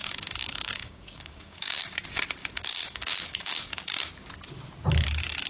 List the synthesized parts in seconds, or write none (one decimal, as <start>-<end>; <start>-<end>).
0.0-2.0; 2.4-4.1

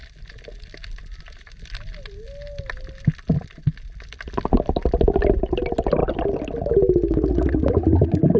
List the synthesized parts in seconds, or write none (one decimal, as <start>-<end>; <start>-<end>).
none

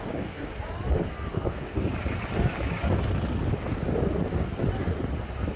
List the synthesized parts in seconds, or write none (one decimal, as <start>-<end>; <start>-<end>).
0.0-0.5; 1.3-1.8

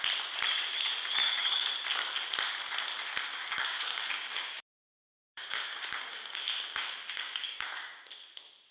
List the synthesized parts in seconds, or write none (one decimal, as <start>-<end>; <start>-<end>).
1.2-1.7; 3.3-8.1